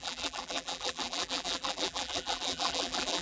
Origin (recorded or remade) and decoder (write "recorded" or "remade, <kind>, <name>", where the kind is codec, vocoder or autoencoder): remade, vocoder, BigVGAN v2